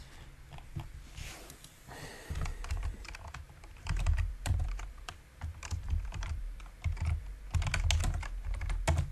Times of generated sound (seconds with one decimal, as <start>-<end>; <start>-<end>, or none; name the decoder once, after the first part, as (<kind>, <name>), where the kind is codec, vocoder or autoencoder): 2.1-6.6 (vocoder, BigVGAN v2)